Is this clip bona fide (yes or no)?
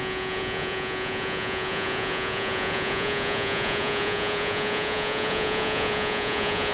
no